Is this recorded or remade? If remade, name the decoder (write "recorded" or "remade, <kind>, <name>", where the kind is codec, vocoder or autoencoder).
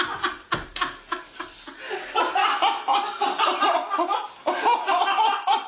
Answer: recorded